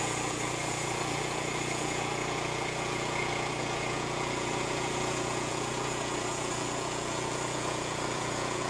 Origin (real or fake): fake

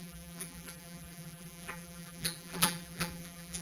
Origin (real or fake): fake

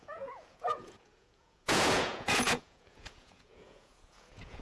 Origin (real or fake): fake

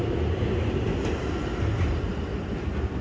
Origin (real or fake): real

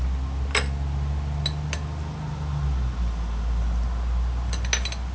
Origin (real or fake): real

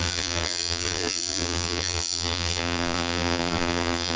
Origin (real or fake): fake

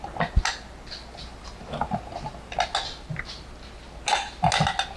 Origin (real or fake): real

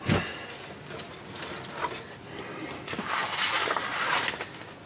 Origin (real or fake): real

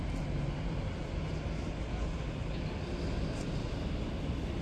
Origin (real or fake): real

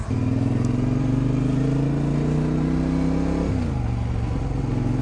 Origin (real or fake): real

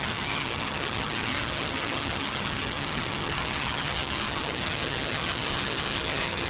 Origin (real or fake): fake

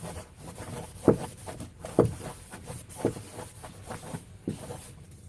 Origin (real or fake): real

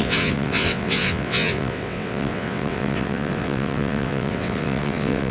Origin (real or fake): fake